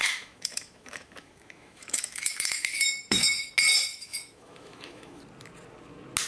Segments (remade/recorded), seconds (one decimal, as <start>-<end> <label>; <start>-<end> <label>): 0.0-3.5 remade; 3.5-3.9 recorded; 3.9-5.2 remade; 5.2-6.3 recorded